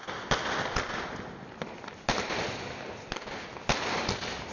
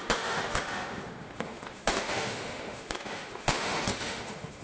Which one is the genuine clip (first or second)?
first